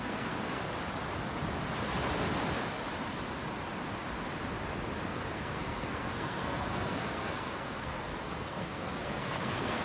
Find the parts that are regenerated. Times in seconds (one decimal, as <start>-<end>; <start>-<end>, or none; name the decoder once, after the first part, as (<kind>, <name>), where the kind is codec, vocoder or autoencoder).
0.0-0.6 (codec, SNAC); 5.1-9.8